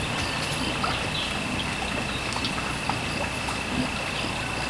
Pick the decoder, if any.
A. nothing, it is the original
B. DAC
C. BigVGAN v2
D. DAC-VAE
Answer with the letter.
A